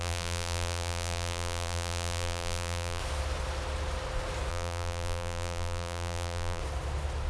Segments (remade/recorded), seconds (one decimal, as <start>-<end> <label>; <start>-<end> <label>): 0.0-3.0 remade; 3.0-4.5 recorded; 4.5-6.6 remade; 6.6-7.3 recorded